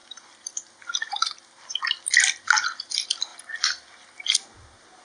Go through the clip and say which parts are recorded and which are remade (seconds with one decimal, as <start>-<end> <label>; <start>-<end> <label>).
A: 0.0-5.0 recorded